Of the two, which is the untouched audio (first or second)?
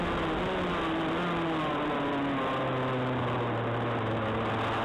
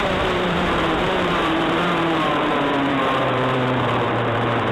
first